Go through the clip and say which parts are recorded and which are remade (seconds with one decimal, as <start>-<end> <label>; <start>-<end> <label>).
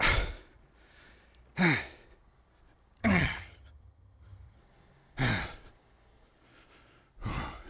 0.0-3.0 recorded; 3.0-4.6 remade; 4.6-7.7 recorded